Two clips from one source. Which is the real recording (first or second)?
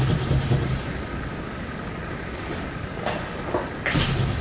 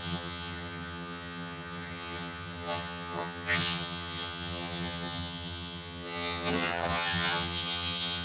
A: first